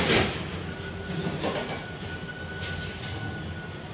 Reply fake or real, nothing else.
real